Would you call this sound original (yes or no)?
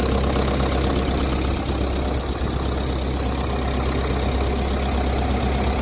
yes